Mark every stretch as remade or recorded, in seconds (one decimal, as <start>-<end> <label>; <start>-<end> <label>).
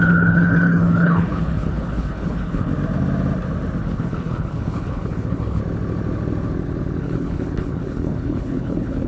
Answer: 0.0-2.7 remade; 2.7-3.8 recorded; 3.8-5.6 remade; 5.6-7.0 recorded; 7.0-9.1 remade